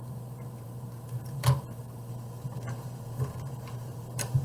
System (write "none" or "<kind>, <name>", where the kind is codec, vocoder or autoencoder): vocoder, BigVGAN v2